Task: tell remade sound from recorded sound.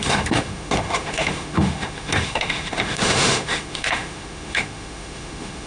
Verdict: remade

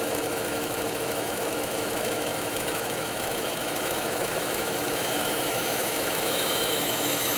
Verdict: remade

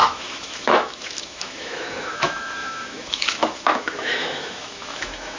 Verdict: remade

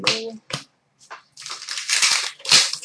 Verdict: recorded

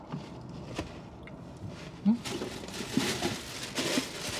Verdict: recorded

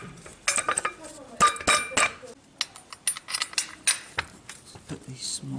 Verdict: recorded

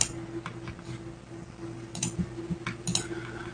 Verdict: recorded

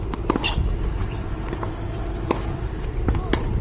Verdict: recorded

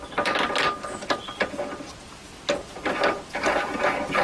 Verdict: recorded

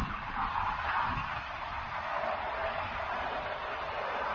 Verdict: recorded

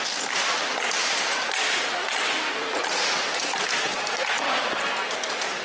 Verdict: recorded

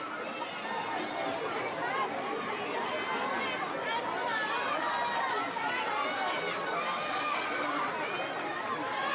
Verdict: recorded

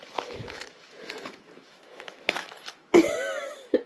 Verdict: remade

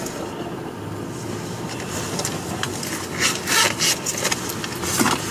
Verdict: recorded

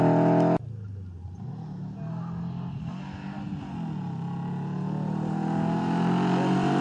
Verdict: recorded